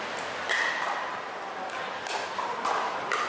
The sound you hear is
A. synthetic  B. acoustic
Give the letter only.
B